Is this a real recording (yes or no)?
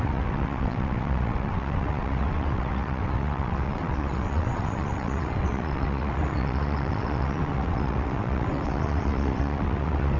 no